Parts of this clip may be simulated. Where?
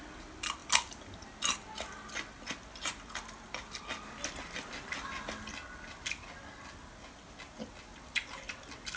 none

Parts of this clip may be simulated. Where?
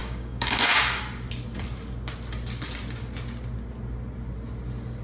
0.0-1.0 (codec, DAC)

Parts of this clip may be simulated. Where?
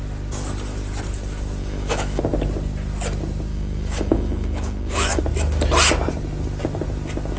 1.6-2.2 (autoencoder, DAC-VAE); 3.5-5.2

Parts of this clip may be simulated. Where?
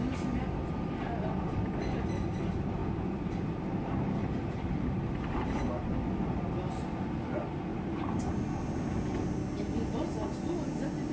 2.8-5.7 (vocoder, BigVGAN v2); 7.7-8.3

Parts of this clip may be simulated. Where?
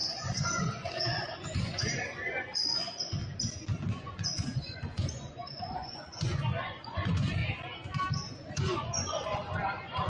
0.0-3.2 (vocoder, Vocos); 3.9-7.4; 8.3-10.1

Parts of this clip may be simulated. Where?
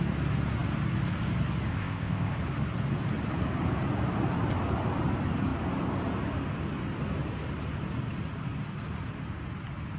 1.7-2.3 (codec, ZipCodec)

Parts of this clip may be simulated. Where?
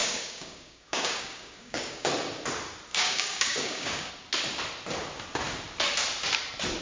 0.0-2.1 (codec, DAC); 2.9-4.1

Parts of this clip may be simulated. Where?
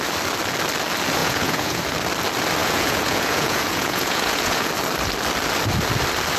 1.2-1.8 (vocoder, Vocos); 2.6-4.7